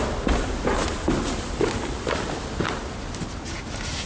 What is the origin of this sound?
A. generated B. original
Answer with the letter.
B